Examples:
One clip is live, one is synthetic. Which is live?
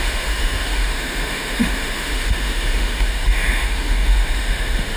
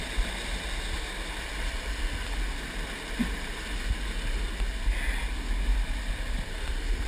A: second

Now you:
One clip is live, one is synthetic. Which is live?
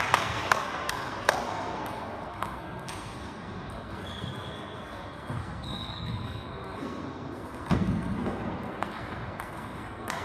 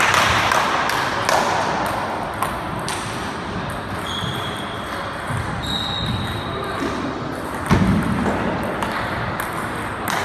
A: second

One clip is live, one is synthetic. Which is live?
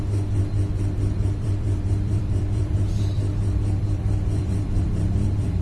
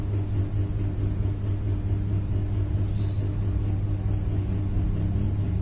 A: second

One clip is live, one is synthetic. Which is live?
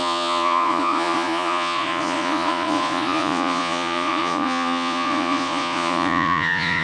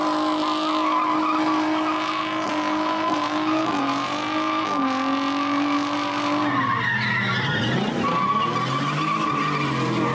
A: second